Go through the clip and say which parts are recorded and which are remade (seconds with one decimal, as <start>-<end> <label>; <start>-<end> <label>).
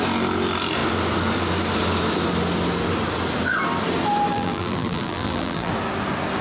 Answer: 0.0-4.3 recorded; 4.3-5.7 remade; 5.7-6.4 recorded